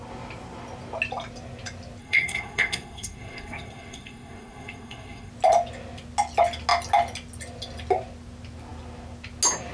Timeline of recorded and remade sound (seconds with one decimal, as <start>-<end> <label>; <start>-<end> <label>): 0.0-2.0 recorded; 2.0-5.3 remade; 5.3-9.7 recorded